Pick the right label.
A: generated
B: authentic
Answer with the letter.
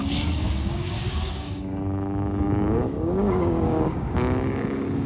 A